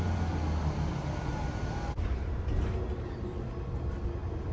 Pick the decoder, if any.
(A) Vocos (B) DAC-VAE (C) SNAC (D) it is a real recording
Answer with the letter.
D